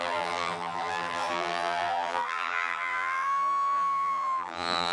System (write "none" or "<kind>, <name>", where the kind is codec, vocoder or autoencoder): vocoder, BigVGAN v2